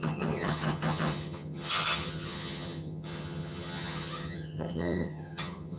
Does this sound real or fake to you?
fake